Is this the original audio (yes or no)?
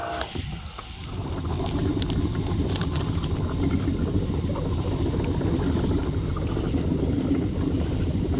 yes